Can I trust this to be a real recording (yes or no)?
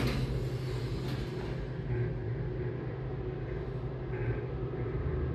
yes